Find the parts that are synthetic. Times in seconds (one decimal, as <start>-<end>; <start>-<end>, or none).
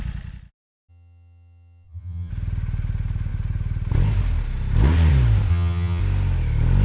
0.9-2.3; 5.5-6.0